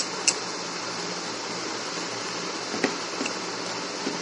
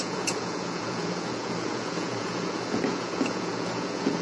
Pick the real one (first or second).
first